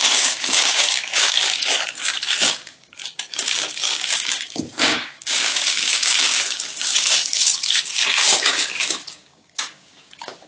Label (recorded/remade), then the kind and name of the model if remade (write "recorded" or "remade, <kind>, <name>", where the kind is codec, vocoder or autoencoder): remade, codec, DAC